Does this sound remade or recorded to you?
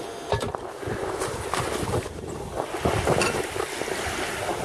recorded